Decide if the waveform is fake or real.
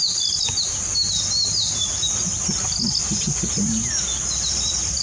real